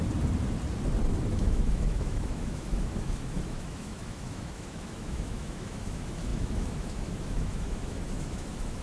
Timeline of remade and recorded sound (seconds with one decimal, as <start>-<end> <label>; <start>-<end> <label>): 0.0-1.3 recorded; 1.3-8.8 remade